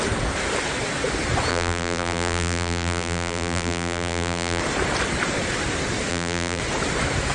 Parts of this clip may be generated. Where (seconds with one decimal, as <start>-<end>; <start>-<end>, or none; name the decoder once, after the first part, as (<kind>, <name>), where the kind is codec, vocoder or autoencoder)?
1.5-4.6 (vocoder, BigVGAN v2); 6.1-6.6